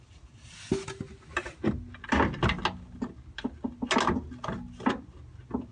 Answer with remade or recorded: recorded